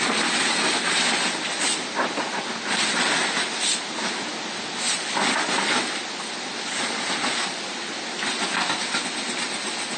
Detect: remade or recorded recorded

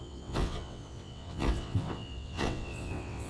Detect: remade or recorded remade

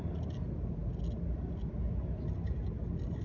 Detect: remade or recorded recorded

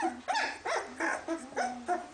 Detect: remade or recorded recorded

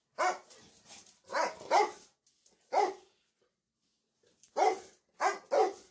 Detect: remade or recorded recorded